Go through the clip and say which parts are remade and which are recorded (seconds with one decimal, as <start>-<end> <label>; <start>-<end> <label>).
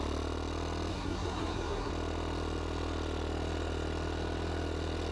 0.0-0.9 recorded; 0.9-1.9 remade; 1.9-5.1 recorded